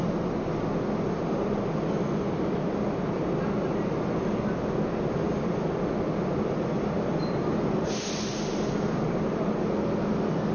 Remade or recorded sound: recorded